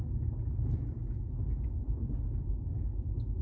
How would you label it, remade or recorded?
recorded